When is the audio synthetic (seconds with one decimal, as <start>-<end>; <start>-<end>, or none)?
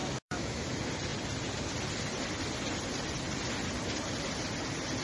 0.0-0.6